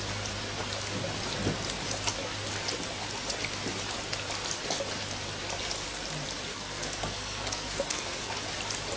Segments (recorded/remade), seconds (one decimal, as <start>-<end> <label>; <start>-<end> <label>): 0.0-6.5 recorded; 6.5-8.3 remade; 8.3-9.0 recorded